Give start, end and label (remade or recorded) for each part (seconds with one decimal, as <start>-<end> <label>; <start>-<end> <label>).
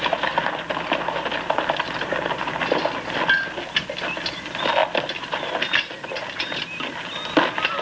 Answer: 0.0-7.8 recorded